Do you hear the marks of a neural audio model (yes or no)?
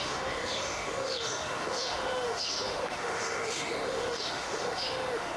yes